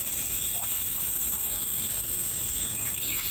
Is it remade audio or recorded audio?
remade